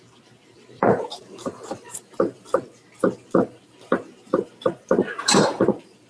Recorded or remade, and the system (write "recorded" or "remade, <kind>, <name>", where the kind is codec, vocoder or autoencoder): remade, vocoder, BigVGAN v2